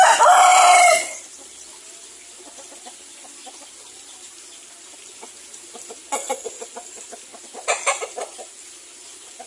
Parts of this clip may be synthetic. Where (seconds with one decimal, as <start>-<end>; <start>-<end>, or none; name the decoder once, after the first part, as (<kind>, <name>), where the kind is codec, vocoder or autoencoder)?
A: 7.3-8.6 (vocoder, BigVGAN v2)